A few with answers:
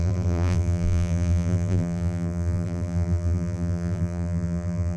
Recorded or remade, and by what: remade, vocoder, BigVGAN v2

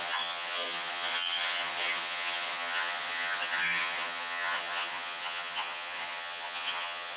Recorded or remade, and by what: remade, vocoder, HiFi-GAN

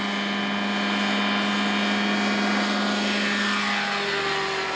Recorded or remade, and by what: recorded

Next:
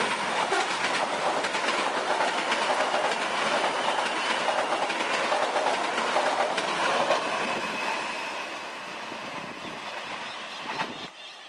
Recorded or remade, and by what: recorded